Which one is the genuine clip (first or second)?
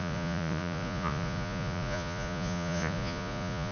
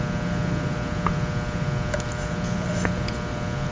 second